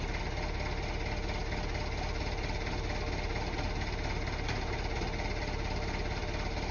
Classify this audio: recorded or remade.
recorded